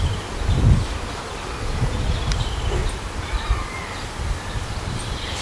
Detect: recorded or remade recorded